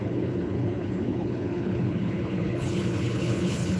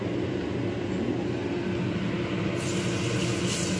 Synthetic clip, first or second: first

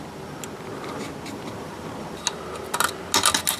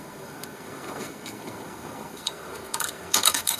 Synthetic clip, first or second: second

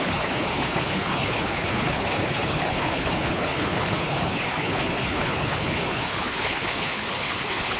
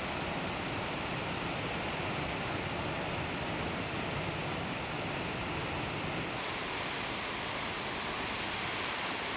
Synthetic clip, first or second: first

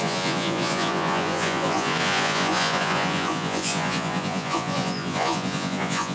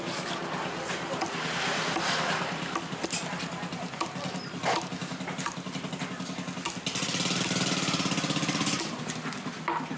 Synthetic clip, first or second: first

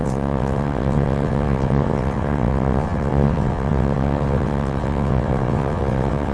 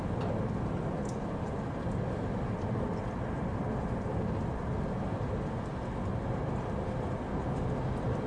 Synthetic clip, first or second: first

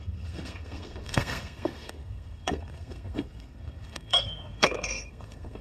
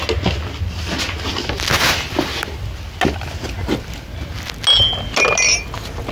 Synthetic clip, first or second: first